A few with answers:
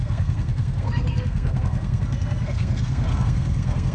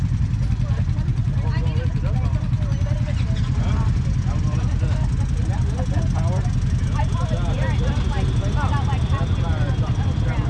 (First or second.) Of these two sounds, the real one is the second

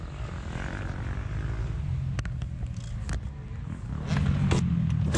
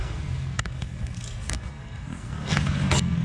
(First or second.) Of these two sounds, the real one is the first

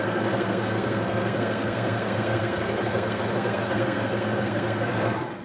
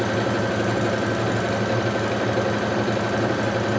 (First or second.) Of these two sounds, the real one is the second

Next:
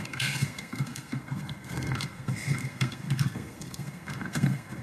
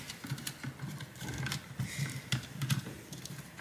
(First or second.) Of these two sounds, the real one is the second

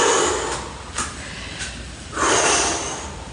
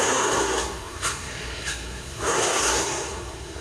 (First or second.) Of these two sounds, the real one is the first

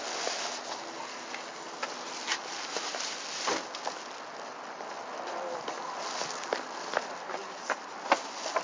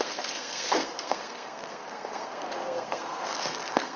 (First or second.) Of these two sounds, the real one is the first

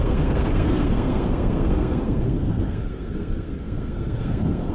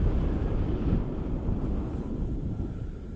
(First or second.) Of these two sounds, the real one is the second